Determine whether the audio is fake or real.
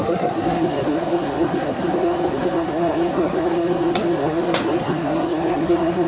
fake